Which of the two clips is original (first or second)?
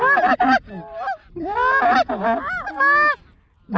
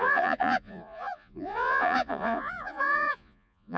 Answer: first